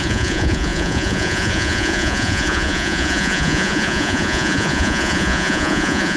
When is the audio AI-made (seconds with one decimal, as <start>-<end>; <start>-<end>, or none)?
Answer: 0.0-6.2